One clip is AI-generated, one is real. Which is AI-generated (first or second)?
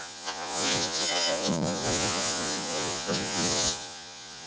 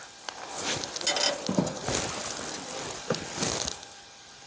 first